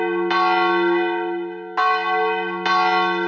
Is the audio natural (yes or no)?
yes